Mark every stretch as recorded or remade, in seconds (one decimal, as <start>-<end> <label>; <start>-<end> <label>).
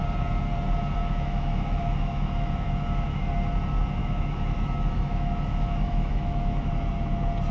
0.0-1.0 recorded; 1.0-3.3 remade; 3.3-4.0 recorded; 4.0-6.7 remade; 6.7-7.5 recorded